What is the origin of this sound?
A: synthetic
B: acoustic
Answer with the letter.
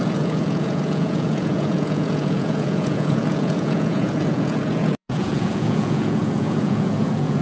A